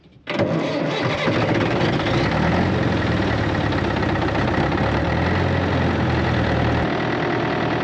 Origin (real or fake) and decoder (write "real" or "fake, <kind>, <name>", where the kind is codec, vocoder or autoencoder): real